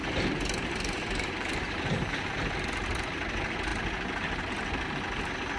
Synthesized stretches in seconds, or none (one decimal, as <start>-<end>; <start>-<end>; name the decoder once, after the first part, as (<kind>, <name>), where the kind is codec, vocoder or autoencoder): 0.0-2.3 (vocoder, BigVGAN v2)